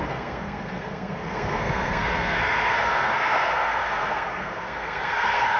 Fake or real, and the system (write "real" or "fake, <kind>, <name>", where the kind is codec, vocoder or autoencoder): fake, codec, SNAC